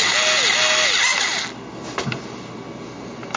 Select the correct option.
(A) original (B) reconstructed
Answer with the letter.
A